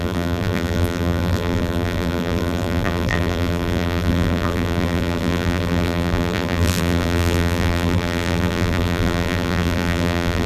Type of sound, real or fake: fake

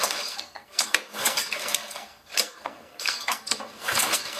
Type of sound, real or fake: fake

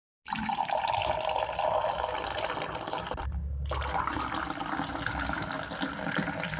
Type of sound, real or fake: real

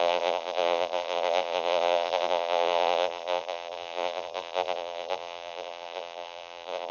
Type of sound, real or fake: fake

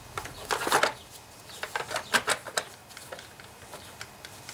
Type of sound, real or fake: real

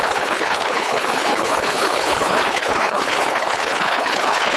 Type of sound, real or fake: fake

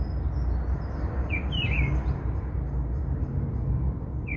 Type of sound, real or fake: real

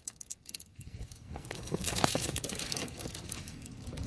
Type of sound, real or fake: fake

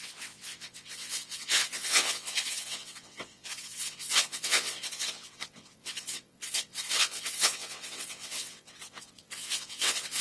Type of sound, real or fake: fake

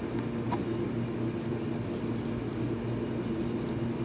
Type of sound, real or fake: real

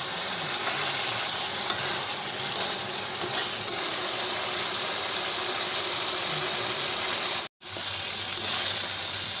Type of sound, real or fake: real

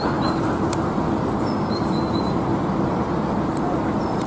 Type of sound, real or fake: fake